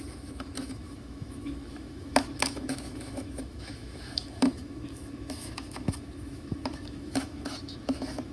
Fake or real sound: fake